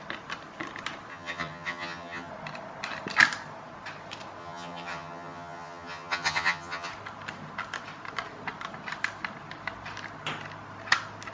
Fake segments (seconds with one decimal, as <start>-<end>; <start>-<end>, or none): 1.1-2.3; 4.4-6.9